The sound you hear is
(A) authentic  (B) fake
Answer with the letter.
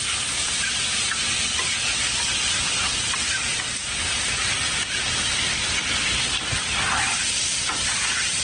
A